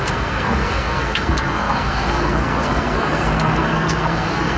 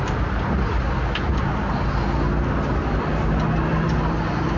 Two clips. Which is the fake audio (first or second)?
first